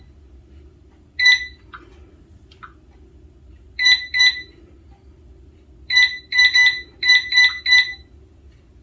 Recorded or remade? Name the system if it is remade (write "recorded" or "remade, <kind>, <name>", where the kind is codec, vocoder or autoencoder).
recorded